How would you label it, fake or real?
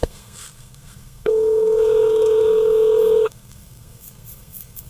fake